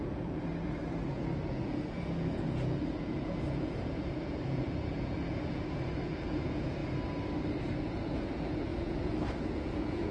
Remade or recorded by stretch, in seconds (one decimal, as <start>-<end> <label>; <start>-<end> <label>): 0.0-0.5 remade; 0.5-1.1 recorded; 1.1-6.8 remade; 6.8-7.6 recorded; 7.6-10.1 remade